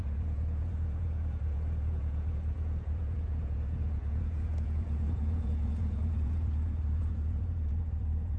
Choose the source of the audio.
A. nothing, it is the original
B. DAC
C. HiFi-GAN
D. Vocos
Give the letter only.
D